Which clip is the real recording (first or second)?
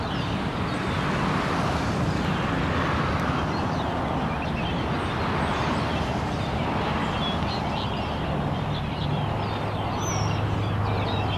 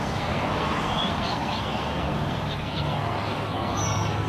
first